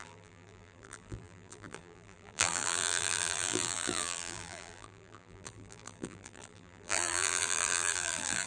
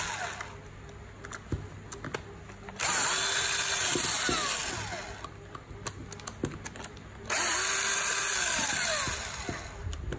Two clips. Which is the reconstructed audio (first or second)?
first